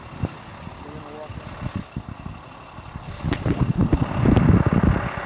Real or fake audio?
real